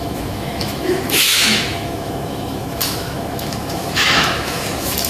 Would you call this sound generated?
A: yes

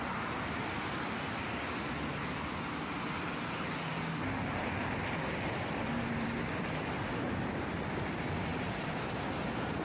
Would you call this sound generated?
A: no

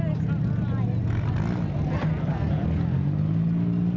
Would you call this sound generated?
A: no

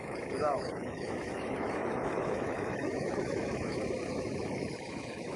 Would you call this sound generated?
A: yes